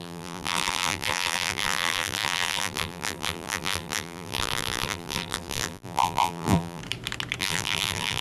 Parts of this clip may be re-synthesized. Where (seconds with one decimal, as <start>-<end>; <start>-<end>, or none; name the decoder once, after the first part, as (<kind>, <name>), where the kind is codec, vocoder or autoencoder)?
0.0-6.8 (vocoder, BigVGAN v2); 7.4-8.2